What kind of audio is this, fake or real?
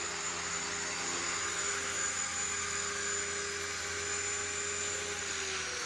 real